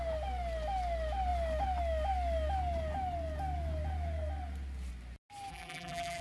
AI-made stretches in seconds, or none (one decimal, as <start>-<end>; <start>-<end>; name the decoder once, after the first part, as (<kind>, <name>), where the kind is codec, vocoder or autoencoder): 5.5-6.2 (vocoder, BigVGAN v2)